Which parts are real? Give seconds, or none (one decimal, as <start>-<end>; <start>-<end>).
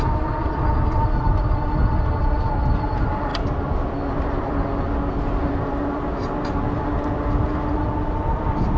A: 0.0-8.8